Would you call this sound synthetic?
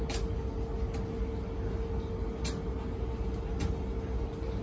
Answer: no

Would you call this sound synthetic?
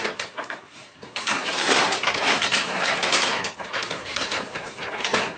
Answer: yes